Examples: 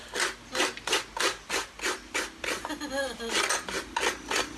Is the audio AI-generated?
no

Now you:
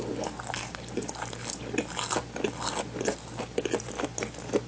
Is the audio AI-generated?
no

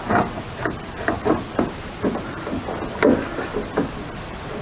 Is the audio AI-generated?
no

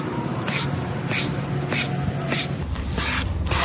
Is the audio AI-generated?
no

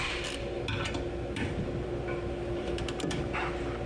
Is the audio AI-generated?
no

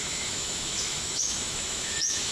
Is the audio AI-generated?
yes